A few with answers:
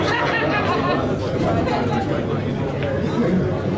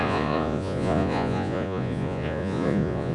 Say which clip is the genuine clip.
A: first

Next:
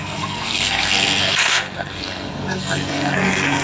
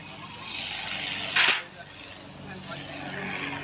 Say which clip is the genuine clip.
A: second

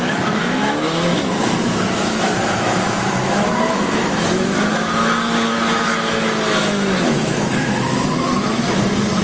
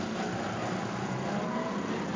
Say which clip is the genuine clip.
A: second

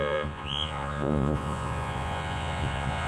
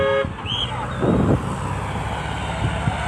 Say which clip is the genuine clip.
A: second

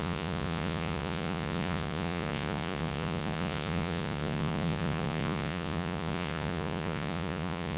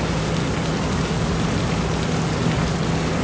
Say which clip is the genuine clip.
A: second